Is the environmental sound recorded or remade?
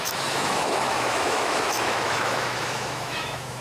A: remade